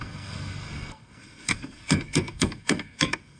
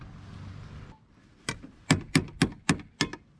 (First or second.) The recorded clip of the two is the second